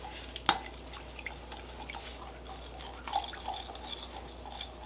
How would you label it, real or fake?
real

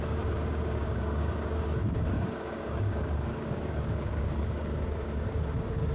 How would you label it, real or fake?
fake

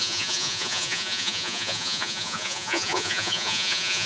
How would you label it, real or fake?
fake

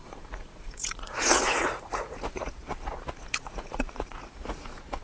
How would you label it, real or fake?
fake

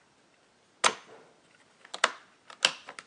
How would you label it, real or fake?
real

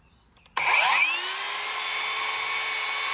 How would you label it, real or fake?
real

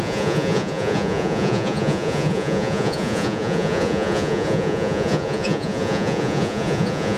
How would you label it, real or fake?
fake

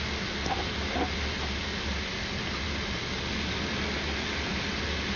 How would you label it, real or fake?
real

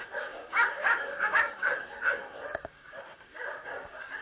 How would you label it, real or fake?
fake